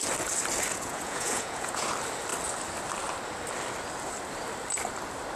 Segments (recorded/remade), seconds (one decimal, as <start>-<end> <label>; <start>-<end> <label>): 0.0-0.7 recorded; 0.7-1.9 remade; 1.9-5.4 recorded